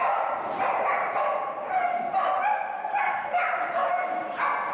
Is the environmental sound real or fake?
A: real